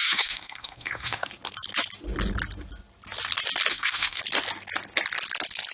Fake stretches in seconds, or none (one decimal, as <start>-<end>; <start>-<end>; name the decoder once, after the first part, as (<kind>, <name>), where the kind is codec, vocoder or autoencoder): 0.0-1.3 (codec, SNAC); 3.7-4.2